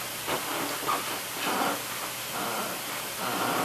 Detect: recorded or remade recorded